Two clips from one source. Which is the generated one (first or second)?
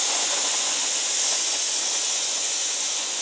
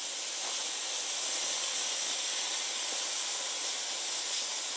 first